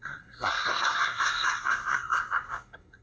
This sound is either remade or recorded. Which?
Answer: remade